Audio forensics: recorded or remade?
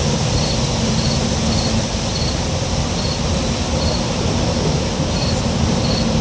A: recorded